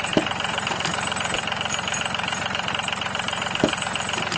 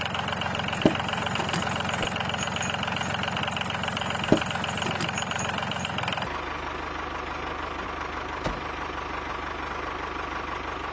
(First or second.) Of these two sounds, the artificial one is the first